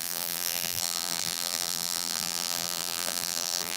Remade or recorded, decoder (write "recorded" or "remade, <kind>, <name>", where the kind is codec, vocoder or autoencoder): remade, vocoder, BigVGAN v2